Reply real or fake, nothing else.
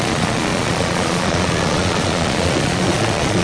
fake